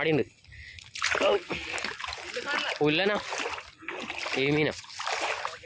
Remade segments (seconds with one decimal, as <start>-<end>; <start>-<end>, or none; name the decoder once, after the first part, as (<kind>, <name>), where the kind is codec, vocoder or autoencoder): none